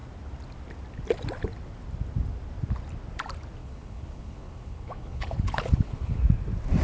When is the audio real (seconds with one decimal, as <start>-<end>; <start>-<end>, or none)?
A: 0.0-3.6; 6.2-6.8